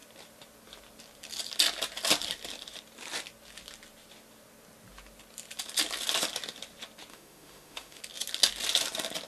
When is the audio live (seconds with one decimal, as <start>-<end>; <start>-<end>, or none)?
0.0-7.1; 8.0-9.3